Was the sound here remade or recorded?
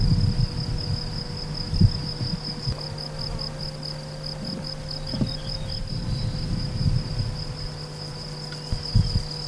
recorded